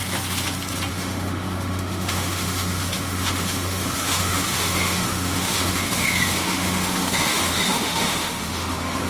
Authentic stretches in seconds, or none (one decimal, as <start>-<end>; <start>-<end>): 0.0-0.9